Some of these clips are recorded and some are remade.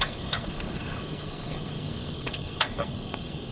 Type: remade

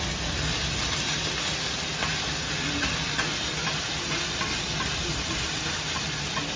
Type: recorded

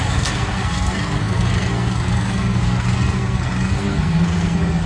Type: remade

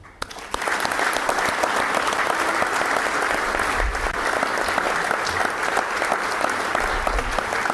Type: recorded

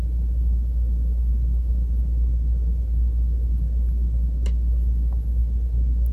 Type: recorded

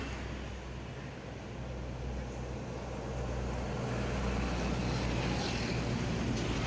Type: recorded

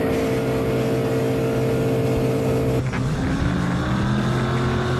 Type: recorded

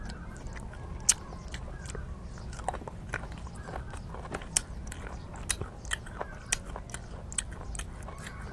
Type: recorded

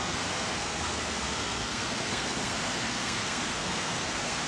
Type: remade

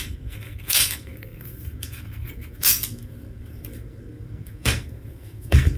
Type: remade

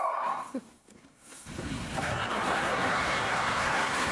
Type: remade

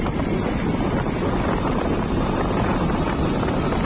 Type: recorded